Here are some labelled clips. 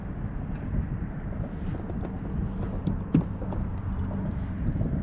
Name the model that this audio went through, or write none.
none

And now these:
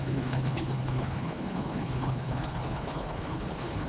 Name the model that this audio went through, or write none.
codec, HILCodec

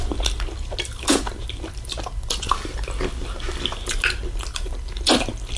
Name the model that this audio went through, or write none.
none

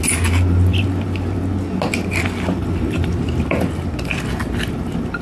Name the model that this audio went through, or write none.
none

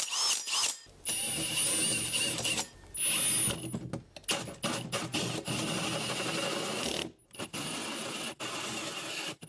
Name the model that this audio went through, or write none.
none